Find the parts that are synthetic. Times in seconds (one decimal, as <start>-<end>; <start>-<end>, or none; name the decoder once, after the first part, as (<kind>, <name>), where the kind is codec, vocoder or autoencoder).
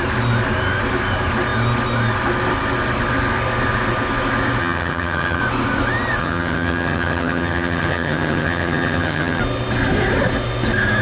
4.6-5.4 (vocoder, HiFi-GAN); 6.2-9.4